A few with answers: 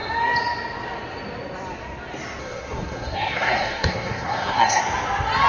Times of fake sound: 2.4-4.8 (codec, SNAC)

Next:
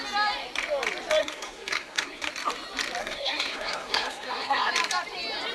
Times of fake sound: 1.2-2.3 (codec, SNAC); 3.0-4.7

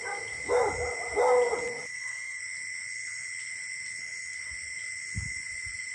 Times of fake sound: 1.9-2.4 (codec, SNAC)

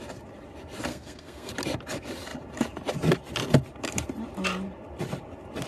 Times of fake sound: 0.9-1.5 (codec, SNAC)